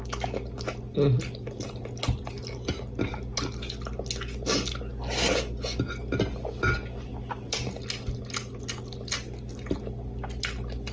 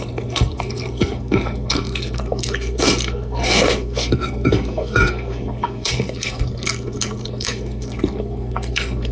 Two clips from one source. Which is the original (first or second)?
first